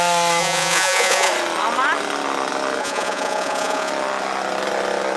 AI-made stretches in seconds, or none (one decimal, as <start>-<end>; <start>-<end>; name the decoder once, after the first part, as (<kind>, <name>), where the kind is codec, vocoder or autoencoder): 0.4-1.3 (vocoder, Vocos); 2.8-3.9